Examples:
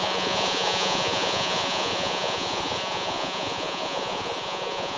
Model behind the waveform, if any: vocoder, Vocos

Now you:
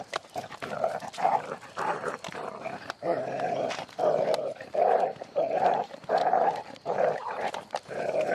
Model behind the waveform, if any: vocoder, BigVGAN v2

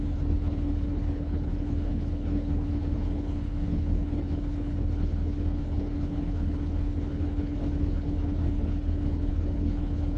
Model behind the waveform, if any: codec, HILCodec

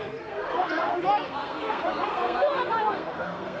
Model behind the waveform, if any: codec, SNAC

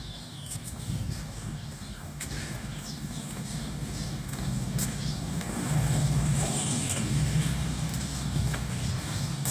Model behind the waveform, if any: codec, DAC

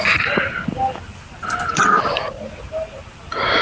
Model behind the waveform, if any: none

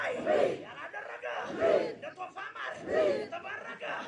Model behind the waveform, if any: none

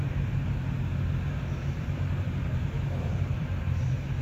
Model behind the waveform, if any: vocoder, BigVGAN v2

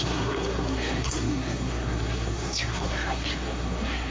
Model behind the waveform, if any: codec, SNAC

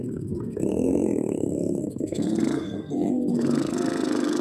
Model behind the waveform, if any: codec, SNAC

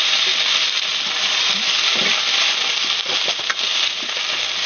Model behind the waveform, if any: none